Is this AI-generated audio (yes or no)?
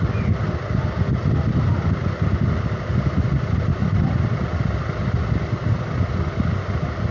no